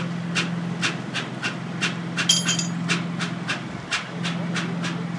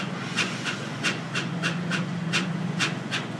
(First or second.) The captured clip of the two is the first